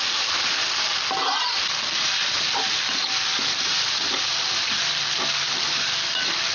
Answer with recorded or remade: recorded